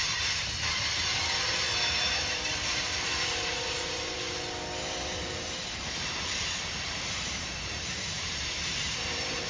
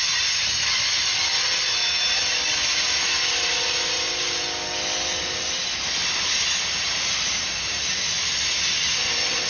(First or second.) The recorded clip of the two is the second